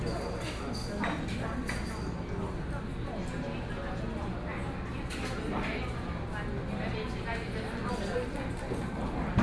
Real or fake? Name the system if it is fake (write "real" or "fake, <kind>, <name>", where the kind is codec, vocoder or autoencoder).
real